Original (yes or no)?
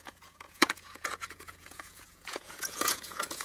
no